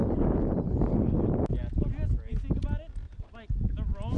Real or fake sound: real